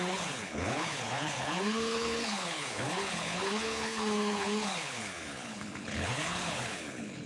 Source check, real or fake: fake